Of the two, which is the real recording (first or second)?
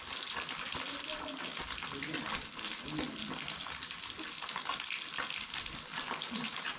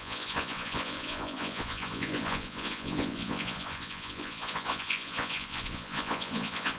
first